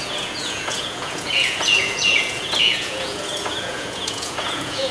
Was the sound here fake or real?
fake